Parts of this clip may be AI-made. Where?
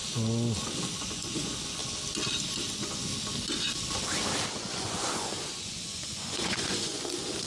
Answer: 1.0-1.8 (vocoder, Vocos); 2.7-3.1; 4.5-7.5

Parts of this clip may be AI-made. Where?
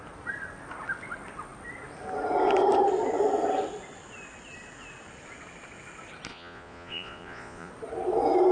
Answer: 6.3-7.7 (vocoder, Vocos)